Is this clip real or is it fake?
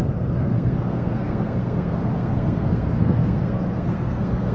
fake